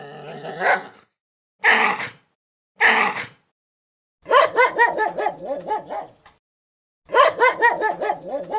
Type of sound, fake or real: real